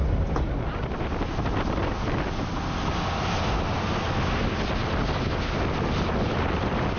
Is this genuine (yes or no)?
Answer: yes